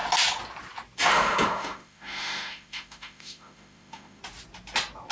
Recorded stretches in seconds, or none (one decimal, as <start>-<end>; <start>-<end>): 0.0-1.1; 4.2-5.1